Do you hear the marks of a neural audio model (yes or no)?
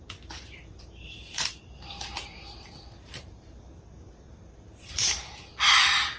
yes